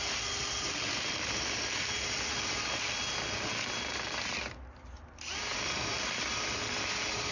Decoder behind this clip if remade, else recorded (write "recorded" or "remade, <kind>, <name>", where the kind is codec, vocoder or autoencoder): recorded